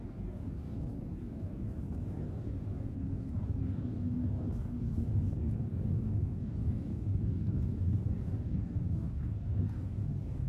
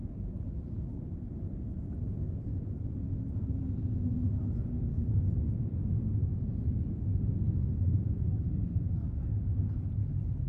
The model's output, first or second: first